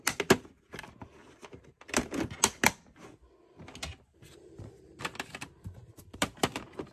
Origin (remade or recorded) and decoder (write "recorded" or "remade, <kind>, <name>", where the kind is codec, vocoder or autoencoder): recorded